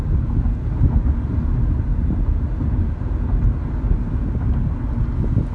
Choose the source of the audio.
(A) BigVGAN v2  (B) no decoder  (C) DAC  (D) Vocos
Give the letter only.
B